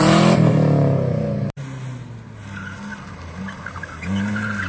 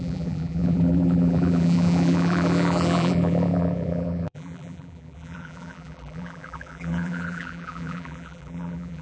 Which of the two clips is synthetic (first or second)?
second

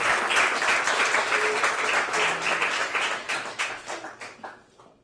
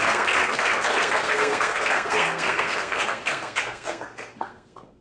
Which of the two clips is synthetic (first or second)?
second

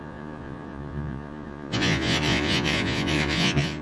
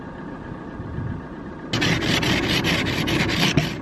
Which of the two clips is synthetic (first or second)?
first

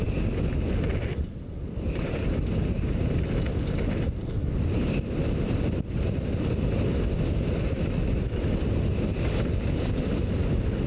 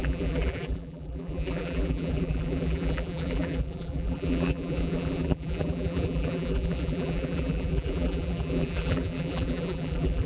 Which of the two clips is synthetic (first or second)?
second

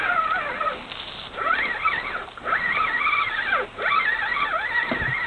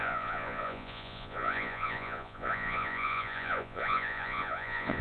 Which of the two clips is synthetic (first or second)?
second